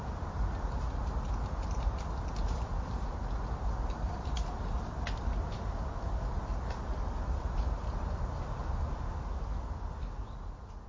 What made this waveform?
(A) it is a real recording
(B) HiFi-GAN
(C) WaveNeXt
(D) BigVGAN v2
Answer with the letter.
A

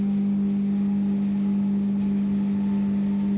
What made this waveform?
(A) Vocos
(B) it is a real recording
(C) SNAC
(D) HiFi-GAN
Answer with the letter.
B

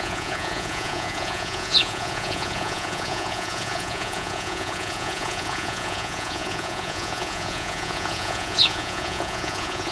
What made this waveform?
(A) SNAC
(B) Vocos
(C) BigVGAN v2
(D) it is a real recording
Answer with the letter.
B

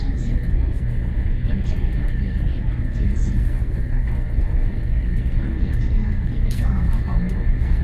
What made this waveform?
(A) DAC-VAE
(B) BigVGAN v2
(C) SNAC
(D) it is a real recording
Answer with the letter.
C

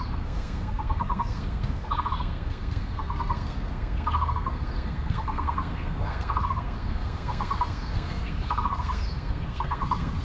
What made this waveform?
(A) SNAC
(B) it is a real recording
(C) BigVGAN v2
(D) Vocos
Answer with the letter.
A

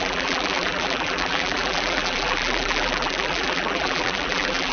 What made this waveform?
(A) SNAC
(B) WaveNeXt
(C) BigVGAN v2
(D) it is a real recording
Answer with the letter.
C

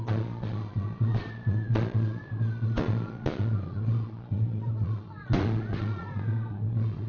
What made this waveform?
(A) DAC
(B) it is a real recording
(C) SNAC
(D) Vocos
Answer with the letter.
D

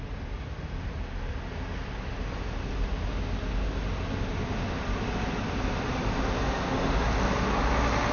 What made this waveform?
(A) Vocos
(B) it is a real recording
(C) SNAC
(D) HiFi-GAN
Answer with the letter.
B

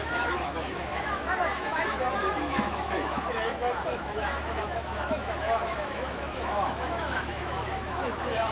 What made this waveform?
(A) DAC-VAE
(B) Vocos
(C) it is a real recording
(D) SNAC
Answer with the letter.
A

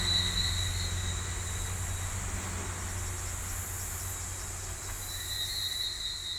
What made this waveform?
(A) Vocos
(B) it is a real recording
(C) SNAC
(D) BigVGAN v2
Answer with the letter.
B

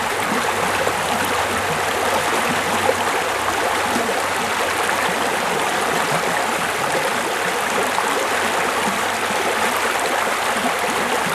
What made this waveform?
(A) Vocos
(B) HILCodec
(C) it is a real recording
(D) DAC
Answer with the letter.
C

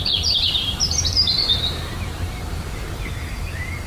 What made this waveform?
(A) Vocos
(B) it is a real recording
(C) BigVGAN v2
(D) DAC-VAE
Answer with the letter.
C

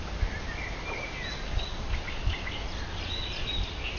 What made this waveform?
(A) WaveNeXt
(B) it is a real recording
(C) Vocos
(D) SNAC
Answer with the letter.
B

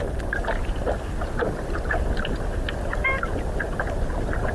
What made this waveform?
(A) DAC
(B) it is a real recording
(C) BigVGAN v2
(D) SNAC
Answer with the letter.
B